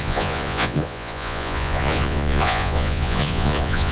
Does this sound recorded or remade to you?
remade